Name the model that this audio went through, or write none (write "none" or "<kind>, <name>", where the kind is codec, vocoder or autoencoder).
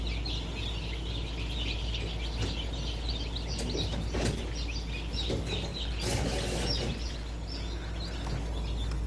none